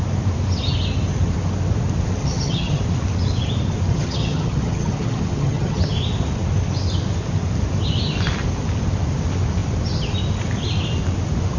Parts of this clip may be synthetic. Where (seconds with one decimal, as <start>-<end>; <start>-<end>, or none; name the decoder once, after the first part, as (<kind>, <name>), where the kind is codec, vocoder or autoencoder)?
2.2-2.8 (vocoder, HiFi-GAN); 3.9-5.8